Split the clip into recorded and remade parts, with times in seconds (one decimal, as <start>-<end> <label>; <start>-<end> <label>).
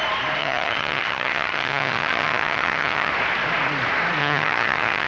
0.0-0.4 recorded; 0.4-3.1 remade; 3.1-4.2 recorded; 4.2-5.1 remade